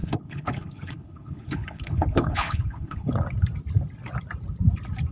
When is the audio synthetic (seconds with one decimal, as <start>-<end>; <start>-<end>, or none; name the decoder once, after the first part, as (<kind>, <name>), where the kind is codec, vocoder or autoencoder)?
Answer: 0.0-3.1 (codec, HILCodec)